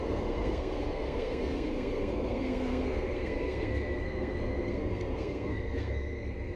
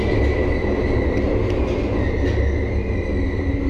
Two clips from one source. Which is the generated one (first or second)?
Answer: first